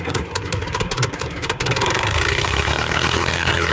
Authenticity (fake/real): fake